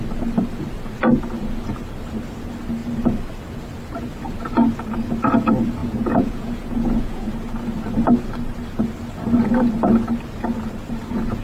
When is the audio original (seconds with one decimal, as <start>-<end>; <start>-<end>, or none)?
0.0-5.8; 7.3-11.4